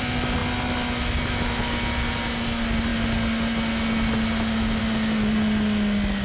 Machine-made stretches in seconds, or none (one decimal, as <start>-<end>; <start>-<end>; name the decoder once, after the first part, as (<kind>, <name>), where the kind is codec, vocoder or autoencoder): none